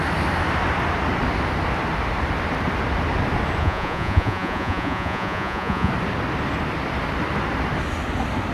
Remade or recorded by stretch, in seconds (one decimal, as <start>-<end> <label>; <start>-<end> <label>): 0.0-3.6 recorded; 3.6-5.9 remade; 5.9-8.5 recorded